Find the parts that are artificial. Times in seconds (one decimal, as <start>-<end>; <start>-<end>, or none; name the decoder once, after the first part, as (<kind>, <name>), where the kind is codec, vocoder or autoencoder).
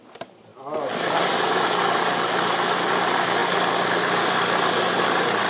none